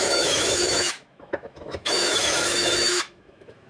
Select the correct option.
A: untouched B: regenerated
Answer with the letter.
B